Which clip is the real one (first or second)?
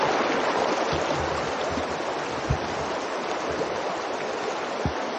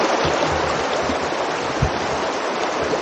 first